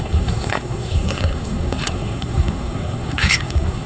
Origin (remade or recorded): remade